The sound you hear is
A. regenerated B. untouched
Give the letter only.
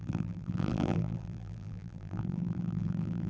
A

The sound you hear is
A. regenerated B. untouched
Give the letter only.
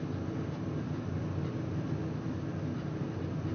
B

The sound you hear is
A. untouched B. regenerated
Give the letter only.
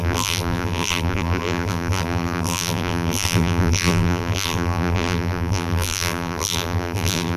B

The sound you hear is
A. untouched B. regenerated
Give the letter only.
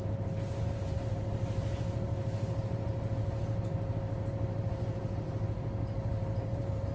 B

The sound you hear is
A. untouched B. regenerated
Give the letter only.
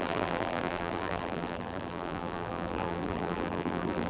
B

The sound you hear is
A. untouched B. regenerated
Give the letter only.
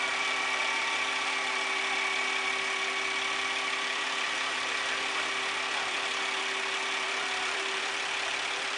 B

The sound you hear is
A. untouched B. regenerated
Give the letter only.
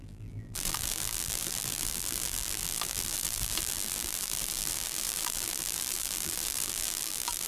B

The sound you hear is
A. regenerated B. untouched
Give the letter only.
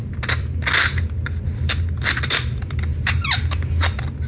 B